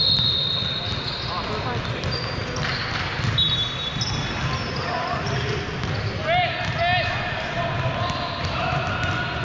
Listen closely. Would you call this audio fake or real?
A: real